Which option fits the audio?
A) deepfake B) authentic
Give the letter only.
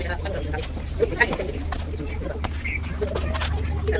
B